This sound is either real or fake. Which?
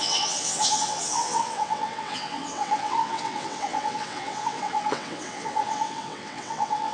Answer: fake